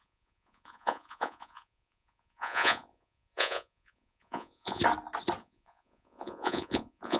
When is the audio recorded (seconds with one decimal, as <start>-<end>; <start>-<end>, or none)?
4.8-5.4